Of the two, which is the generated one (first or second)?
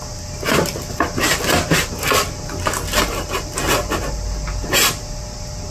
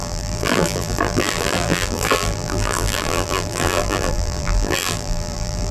second